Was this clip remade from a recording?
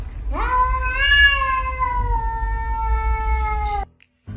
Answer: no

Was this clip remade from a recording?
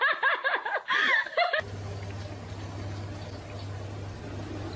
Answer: no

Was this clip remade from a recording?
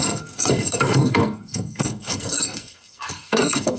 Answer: yes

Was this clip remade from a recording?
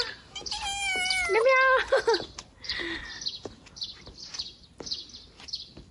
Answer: no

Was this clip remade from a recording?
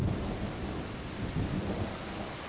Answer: no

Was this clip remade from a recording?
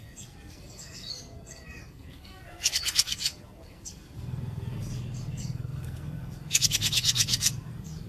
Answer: yes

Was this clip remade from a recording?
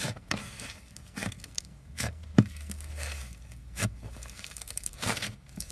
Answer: yes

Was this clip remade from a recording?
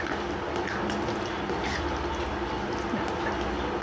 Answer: no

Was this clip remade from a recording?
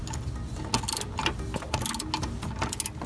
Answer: no